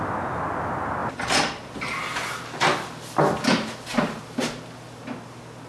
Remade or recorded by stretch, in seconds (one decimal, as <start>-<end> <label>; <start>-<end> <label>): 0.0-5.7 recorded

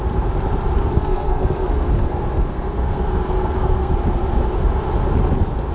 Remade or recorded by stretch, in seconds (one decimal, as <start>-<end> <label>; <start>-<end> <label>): 0.0-0.8 recorded; 0.8-3.9 remade; 3.9-5.7 recorded

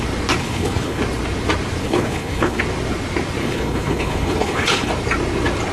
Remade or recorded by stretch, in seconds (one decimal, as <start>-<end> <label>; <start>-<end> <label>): 0.0-0.4 recorded; 0.4-1.0 remade; 1.0-1.8 recorded; 1.8-2.6 remade; 2.6-3.4 recorded; 3.4-4.9 remade; 4.9-5.7 recorded

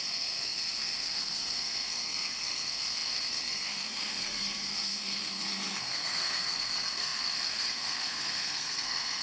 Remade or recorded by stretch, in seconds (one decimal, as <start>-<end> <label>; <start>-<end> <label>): 0.0-9.2 remade

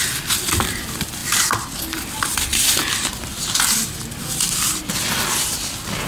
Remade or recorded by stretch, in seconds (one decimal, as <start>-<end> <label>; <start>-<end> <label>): 0.0-6.1 recorded

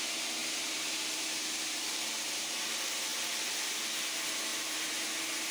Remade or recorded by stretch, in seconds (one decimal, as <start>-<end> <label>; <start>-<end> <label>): 0.0-0.4 recorded; 0.4-2.6 remade; 2.6-4.5 recorded; 4.5-5.5 remade